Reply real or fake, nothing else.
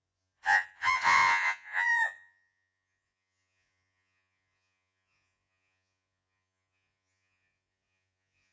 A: fake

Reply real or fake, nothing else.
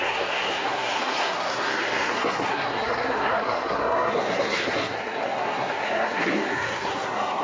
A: fake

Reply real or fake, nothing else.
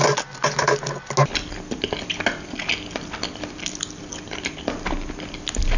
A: real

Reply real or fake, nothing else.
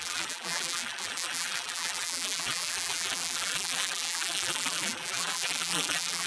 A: fake